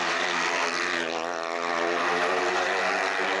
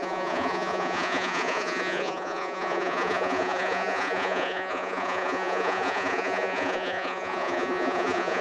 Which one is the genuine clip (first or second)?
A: first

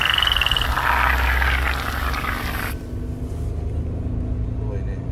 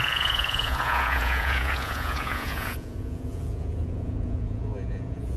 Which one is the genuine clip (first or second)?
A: first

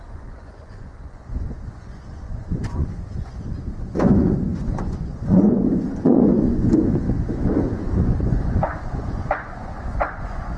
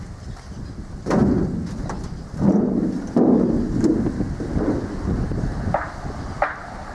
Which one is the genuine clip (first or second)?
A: second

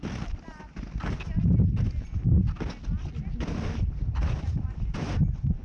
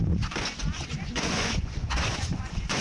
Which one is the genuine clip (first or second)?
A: first